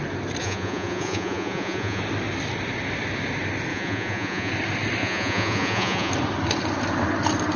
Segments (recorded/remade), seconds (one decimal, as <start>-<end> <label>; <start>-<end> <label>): 0.0-0.4 recorded; 0.4-2.0 remade; 2.0-3.7 recorded; 3.7-4.5 remade; 4.5-5.0 recorded; 5.0-6.1 remade; 6.1-7.6 recorded